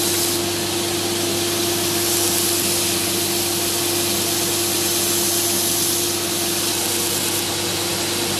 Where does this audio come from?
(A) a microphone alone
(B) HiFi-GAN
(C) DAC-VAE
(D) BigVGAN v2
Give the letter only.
A